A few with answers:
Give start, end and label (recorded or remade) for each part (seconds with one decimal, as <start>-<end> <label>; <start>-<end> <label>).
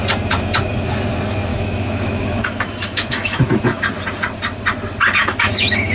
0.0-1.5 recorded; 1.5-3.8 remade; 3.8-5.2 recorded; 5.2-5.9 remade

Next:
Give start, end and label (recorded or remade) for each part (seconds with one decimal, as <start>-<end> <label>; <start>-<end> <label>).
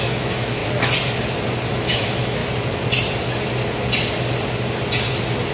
0.0-0.6 remade; 0.6-1.7 recorded; 1.7-2.4 remade; 2.4-5.5 recorded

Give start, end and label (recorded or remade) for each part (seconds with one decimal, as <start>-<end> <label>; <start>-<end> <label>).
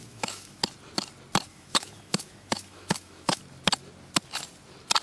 0.0-0.6 remade; 0.6-1.5 recorded; 1.5-3.4 remade; 3.4-5.0 recorded